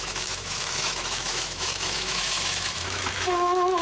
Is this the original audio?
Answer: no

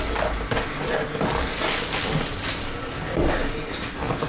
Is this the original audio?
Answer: yes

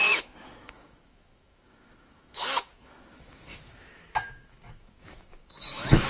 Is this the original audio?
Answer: no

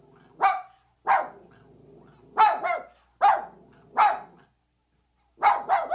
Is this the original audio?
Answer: yes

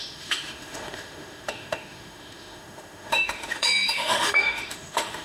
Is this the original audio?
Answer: no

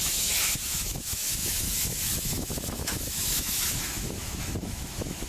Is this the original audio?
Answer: no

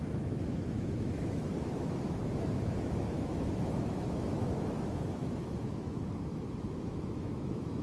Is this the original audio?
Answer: no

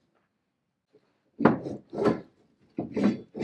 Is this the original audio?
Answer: yes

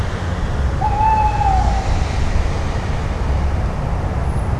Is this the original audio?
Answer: yes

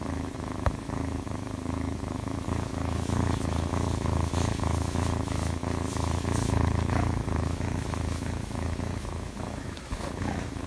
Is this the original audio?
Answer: no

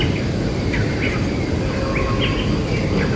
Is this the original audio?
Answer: yes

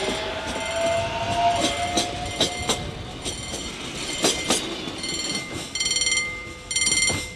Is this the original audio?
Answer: yes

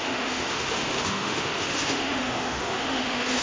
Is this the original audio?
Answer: no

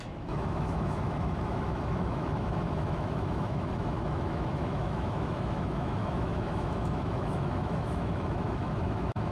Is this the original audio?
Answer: no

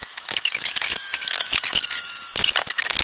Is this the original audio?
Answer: no